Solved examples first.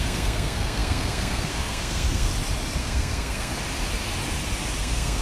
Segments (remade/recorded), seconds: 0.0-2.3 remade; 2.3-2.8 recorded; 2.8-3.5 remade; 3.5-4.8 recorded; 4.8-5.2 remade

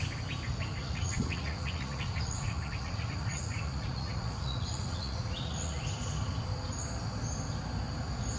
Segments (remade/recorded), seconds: 0.0-0.8 recorded; 0.8-5.8 remade; 5.8-8.4 recorded

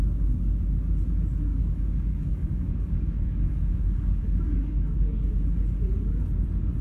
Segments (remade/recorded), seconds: 0.0-1.5 recorded; 1.5-5.3 remade; 5.3-6.8 recorded

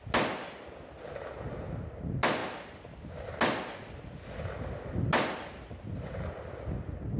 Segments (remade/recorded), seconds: 0.0-7.2 recorded

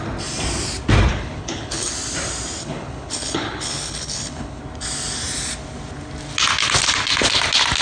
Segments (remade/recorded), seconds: 0.0-1.1 recorded; 1.1-1.9 remade; 1.9-2.6 recorded; 2.6-4.6 remade; 4.6-7.8 recorded

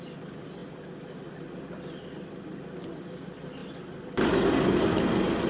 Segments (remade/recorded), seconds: 0.0-5.5 recorded

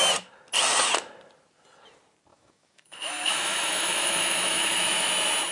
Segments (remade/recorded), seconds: 0.0-2.3 recorded; 2.3-5.1 remade; 5.1-5.5 recorded